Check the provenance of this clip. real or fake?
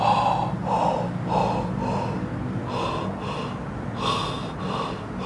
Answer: real